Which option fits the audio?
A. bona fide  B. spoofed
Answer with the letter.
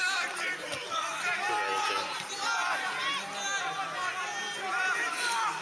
A